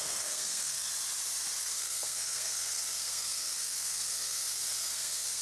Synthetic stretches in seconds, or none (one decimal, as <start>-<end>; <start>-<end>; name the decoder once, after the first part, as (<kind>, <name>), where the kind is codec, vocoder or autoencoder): 0.0-0.9 (codec, SNAC); 1.6-5.4